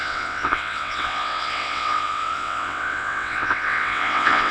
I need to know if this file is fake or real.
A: fake